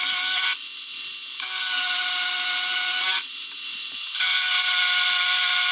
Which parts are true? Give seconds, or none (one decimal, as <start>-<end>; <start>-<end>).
0.0-5.7